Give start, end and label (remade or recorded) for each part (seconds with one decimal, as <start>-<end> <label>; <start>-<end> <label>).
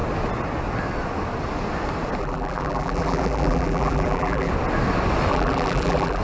0.0-2.2 recorded; 2.2-4.5 remade; 4.5-5.3 recorded; 5.3-6.2 remade